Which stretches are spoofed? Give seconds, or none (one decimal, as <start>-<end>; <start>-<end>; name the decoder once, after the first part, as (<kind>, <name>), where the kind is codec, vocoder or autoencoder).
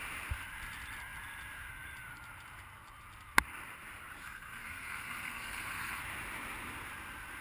4.2-6.0 (codec, SNAC)